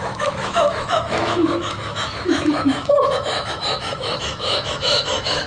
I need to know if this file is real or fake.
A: fake